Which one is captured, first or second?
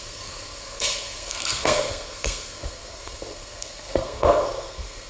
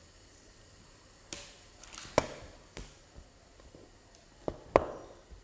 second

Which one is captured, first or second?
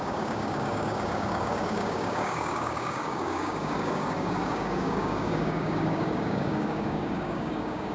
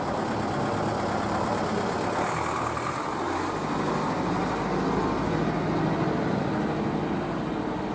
second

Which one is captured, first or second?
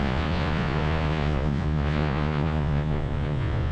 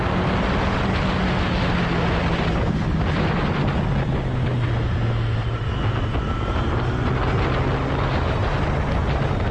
second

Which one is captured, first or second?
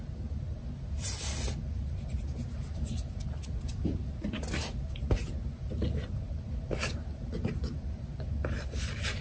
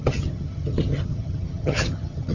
first